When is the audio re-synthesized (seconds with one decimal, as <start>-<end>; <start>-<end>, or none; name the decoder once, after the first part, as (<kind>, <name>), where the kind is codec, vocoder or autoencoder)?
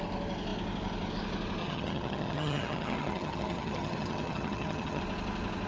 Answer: 1.6-5.0 (vocoder, HiFi-GAN)